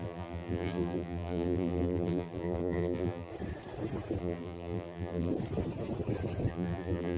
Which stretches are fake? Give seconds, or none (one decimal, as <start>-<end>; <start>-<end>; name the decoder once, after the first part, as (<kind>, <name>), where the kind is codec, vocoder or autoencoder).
0.0-3.3 (vocoder, BigVGAN v2); 4.2-5.3; 6.5-7.2